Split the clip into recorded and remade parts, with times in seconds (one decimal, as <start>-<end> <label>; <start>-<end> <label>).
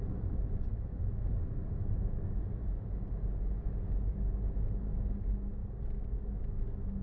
0.0-0.7 recorded; 0.7-1.3 remade; 1.3-7.0 recorded